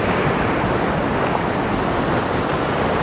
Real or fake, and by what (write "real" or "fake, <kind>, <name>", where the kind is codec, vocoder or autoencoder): real